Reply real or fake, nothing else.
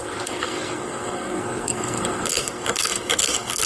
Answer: fake